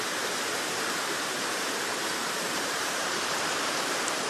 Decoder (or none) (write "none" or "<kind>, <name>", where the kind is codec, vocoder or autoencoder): vocoder, BigVGAN v2